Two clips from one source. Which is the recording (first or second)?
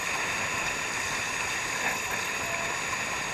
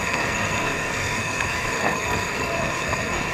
first